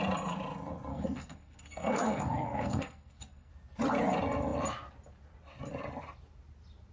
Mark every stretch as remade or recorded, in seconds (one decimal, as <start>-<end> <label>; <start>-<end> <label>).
0.0-0.9 recorded; 0.9-3.5 remade; 3.5-6.9 recorded